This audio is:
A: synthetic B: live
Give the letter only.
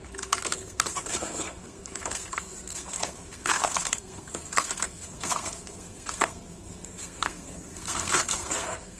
A